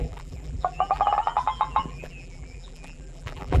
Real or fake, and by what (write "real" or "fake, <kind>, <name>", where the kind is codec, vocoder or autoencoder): fake, vocoder, BigVGAN v2